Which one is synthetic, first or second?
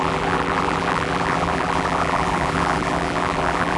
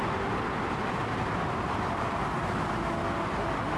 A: first